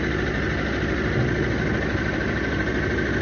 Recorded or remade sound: recorded